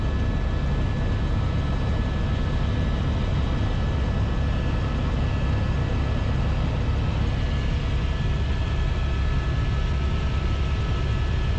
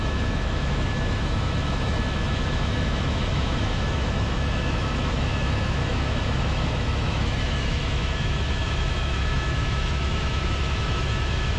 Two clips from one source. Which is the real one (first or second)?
first